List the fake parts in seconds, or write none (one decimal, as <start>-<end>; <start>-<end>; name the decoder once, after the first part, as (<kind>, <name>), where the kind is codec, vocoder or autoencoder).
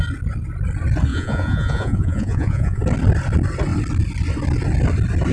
1.1-2.8 (vocoder, Vocos)